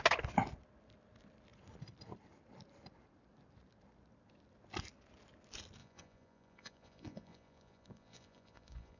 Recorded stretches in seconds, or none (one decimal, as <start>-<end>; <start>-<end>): 0.0-5.8